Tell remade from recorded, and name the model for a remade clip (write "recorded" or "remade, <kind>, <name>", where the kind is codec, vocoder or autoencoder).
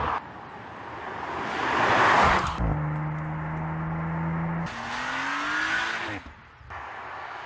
recorded